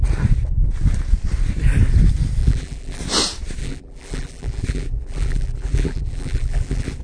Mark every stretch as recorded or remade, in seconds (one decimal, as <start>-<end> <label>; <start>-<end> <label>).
0.0-2.4 recorded; 2.4-3.0 remade; 3.0-3.6 recorded; 3.6-7.0 remade